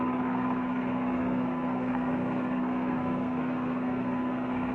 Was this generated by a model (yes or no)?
yes